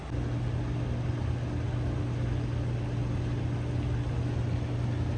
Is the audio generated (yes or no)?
no